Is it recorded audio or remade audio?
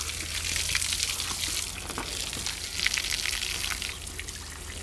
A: recorded